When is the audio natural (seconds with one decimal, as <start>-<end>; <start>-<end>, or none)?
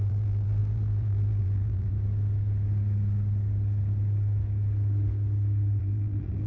1.9-5.8